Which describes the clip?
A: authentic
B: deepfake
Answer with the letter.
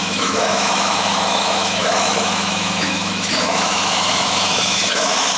B